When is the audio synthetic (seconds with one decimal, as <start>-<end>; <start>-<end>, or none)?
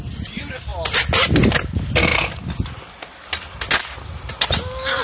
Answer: none